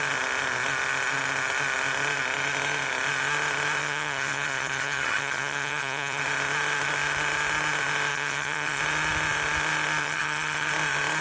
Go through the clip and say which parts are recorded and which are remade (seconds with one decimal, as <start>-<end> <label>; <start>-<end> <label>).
0.0-3.8 recorded; 3.8-6.2 remade; 6.2-8.1 recorded; 8.1-8.8 remade; 8.8-10.0 recorded; 10.0-10.7 remade; 10.7-11.2 recorded

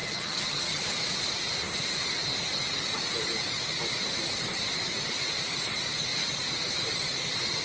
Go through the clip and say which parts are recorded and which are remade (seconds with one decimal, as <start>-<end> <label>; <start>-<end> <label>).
0.0-0.8 remade; 0.8-7.6 recorded

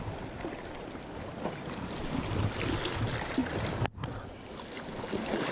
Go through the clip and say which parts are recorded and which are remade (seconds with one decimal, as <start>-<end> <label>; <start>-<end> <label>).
0.0-5.5 recorded